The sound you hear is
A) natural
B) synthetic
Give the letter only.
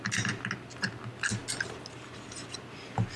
A